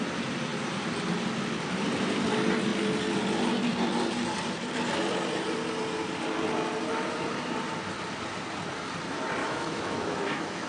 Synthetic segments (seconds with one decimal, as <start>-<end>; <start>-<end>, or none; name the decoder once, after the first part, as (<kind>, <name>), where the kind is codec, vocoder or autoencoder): 9.4-10.7 (autoencoder, DAC-VAE)